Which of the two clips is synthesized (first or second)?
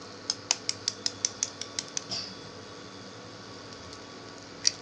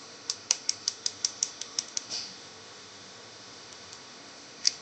second